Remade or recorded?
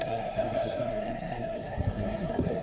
remade